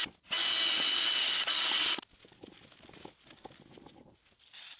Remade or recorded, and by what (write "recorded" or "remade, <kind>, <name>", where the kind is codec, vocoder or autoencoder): recorded